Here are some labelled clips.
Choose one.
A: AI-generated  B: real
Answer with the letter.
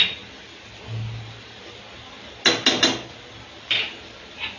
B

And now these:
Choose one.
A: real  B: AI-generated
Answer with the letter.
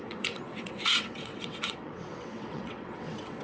B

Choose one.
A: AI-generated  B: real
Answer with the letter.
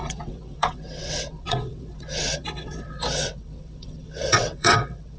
A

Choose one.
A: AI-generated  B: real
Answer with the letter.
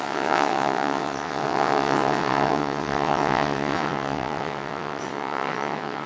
A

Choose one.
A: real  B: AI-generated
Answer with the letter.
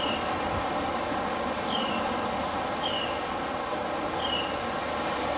A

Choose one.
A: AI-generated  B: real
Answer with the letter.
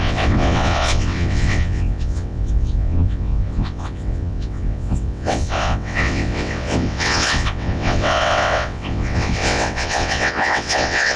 A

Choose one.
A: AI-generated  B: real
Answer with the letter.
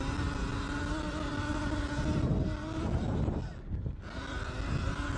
B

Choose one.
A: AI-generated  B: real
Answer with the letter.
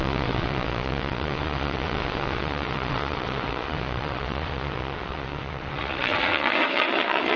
A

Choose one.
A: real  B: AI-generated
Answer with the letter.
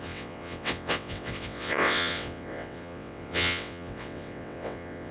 B